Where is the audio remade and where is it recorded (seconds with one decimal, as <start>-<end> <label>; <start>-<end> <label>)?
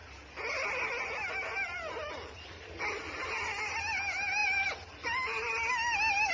0.0-6.3 recorded